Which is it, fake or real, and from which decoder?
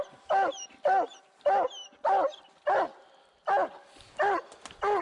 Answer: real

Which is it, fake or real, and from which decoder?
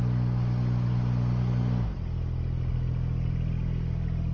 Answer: real